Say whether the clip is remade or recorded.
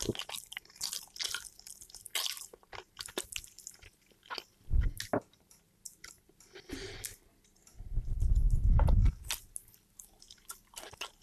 recorded